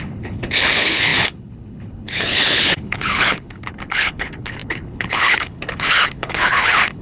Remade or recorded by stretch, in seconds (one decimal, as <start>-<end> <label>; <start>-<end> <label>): 0.0-7.0 remade